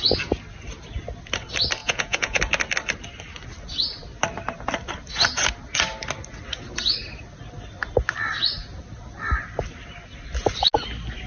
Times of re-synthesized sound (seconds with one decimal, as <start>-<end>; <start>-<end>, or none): 1.8-2.4